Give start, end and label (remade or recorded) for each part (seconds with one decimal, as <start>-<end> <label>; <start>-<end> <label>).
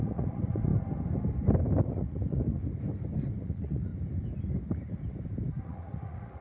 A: 0.0-0.7 remade; 0.7-1.8 recorded; 1.8-2.6 remade; 2.6-3.4 recorded; 3.4-3.9 remade; 3.9-5.6 recorded; 5.6-6.4 remade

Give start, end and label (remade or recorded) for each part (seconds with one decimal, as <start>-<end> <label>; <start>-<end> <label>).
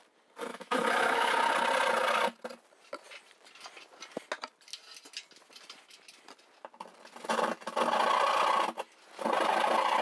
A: 0.0-0.5 recorded; 0.5-1.3 remade; 1.3-10.0 recorded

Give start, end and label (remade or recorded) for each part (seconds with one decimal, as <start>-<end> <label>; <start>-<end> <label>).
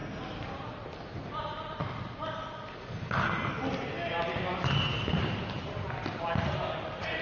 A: 0.0-7.2 recorded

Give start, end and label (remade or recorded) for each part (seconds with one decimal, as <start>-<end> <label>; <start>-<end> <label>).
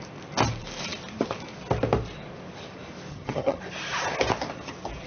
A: 0.0-3.1 recorded; 3.1-3.6 remade; 3.6-5.1 recorded